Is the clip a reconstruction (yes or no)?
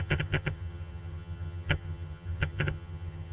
yes